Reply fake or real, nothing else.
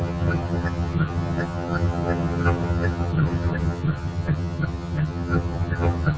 fake